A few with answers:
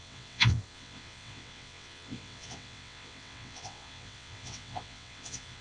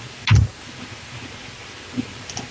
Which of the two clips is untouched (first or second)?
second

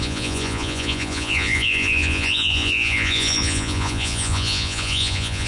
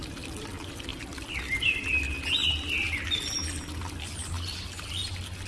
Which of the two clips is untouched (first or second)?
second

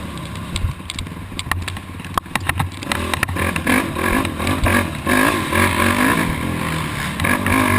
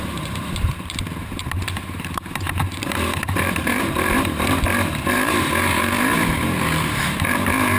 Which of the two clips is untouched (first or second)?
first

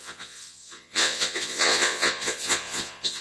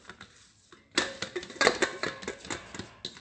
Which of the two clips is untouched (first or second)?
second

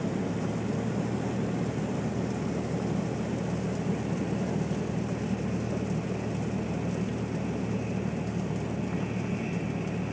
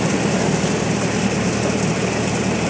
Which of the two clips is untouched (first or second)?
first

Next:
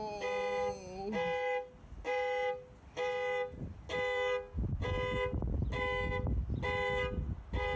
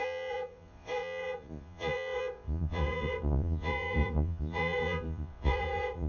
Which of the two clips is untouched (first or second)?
first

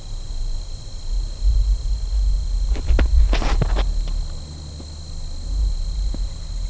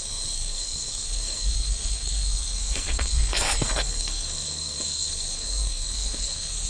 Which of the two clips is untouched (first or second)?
first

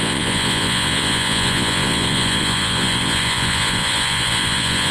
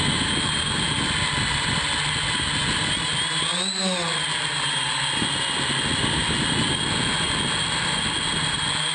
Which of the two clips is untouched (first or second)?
second